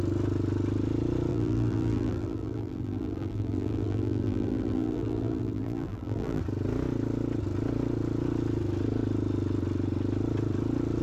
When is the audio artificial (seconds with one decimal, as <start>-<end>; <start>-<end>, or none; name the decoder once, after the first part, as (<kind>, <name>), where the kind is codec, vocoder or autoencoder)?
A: 1.3-6.4 (vocoder, BigVGAN v2)